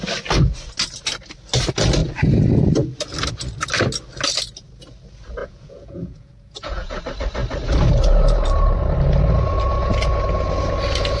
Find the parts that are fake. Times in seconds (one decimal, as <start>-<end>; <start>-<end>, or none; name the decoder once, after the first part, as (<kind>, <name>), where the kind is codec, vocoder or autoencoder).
5.4-7.0 (vocoder, Vocos)